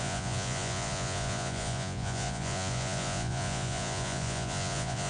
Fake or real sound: fake